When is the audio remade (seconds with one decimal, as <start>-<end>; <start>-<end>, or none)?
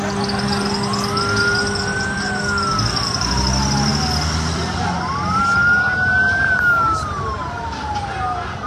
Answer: none